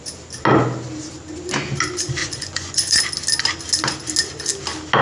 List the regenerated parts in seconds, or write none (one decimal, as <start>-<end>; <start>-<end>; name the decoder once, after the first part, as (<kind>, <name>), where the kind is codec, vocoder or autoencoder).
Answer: 2.2-3.0 (vocoder, Vocos)